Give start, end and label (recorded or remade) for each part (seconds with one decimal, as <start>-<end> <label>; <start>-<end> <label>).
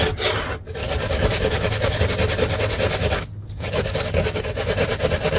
0.0-0.8 recorded; 0.8-2.0 remade; 2.0-3.0 recorded; 3.0-4.4 remade; 4.4-5.4 recorded